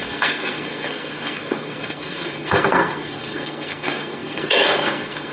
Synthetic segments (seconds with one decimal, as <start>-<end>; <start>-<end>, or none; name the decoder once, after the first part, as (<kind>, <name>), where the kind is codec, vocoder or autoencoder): 0.0-5.3 (codec, SNAC)